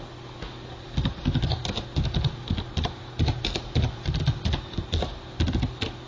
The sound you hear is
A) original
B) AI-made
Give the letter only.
A